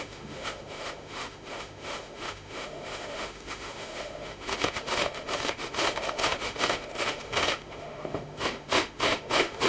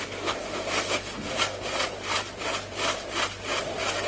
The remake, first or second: first